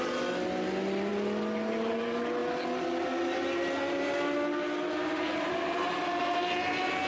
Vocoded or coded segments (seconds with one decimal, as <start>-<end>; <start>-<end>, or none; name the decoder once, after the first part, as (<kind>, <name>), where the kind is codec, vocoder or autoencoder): none